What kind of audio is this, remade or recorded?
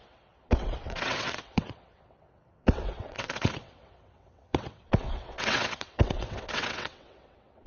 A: remade